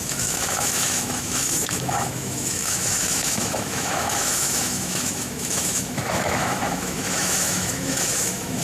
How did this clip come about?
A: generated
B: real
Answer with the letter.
A